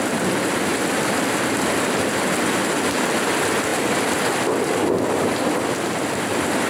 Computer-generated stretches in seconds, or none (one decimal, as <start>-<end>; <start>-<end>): none